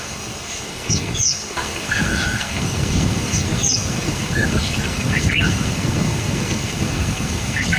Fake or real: fake